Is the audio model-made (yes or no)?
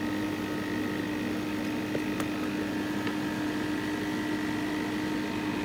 no